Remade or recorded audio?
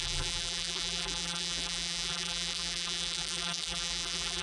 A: remade